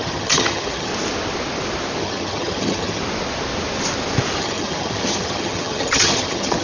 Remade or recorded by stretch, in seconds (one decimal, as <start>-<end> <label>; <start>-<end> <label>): 0.0-0.9 remade; 0.9-2.0 recorded; 2.0-3.0 remade; 3.0-4.4 recorded; 4.4-6.6 remade